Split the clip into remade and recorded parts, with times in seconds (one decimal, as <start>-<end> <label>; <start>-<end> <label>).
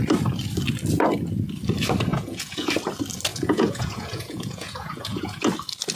0.0-2.1 recorded; 2.1-2.7 remade; 2.7-3.3 recorded; 3.3-5.4 remade; 5.4-6.0 recorded